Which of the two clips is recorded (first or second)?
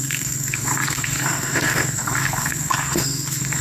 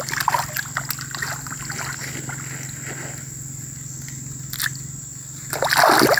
second